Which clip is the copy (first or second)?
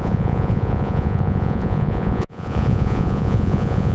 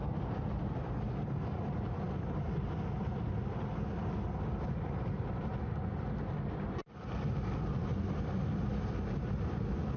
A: first